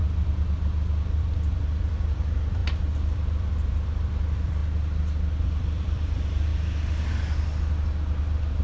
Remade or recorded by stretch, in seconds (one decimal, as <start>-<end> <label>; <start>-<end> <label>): 0.0-1.2 recorded; 1.2-4.6 remade; 4.6-5.4 recorded; 5.4-6.5 remade; 6.5-8.6 recorded